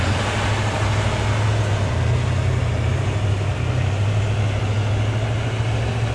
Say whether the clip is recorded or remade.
recorded